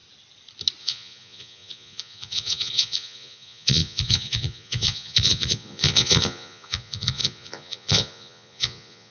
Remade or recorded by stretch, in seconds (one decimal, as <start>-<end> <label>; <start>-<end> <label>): 0.0-0.8 recorded; 0.8-9.1 remade